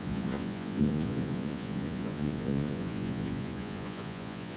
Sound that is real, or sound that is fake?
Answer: fake